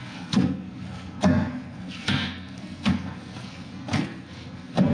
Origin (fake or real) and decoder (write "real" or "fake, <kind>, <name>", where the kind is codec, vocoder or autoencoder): fake, codec, SNAC